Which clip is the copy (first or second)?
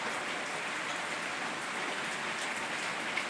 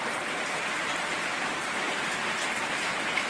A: second